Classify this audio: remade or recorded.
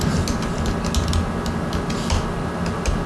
recorded